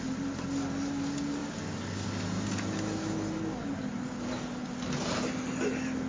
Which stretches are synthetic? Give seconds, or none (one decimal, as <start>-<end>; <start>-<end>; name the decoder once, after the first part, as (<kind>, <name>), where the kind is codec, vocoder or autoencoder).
none